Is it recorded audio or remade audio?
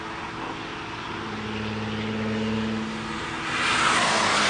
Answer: recorded